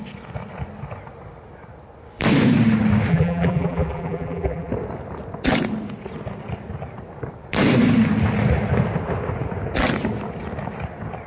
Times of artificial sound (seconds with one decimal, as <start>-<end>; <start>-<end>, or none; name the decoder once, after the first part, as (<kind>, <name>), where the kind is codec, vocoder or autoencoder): 3.1-4.7 (vocoder, BigVGAN v2)